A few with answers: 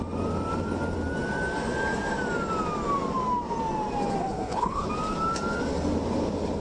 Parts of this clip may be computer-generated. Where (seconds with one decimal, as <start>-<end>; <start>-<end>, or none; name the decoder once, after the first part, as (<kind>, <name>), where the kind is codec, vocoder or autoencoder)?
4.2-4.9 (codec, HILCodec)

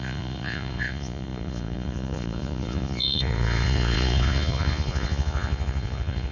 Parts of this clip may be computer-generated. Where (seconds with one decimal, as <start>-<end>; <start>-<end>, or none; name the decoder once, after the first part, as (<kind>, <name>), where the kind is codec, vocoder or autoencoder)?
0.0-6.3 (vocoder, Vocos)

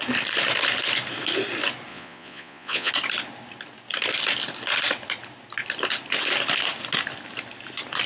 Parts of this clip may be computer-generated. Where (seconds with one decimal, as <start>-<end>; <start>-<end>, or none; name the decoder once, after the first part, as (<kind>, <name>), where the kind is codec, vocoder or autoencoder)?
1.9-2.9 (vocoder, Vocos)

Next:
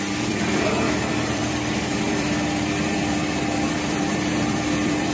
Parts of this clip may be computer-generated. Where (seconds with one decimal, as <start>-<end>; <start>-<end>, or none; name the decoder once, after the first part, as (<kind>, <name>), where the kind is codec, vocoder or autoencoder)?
0.0-5.1 (vocoder, BigVGAN v2)

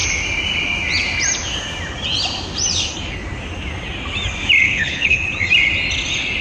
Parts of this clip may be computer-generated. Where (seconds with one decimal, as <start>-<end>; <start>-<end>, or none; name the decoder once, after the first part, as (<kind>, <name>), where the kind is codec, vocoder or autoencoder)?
4.6-5.3 (codec, HILCodec)

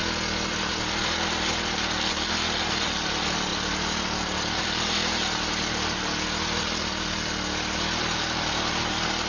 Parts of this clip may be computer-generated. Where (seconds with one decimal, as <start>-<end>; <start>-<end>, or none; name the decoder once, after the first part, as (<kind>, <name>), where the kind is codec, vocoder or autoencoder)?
none